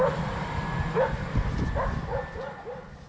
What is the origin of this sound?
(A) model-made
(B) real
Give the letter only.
A